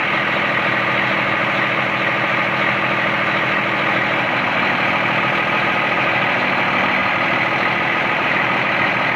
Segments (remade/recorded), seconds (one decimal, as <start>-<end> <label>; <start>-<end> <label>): 0.0-9.2 recorded